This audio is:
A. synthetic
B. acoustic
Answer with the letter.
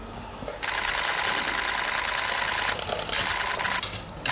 B